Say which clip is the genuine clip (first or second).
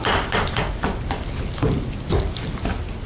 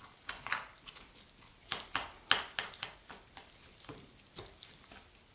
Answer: second